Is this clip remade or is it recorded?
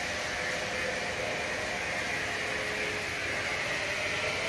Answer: recorded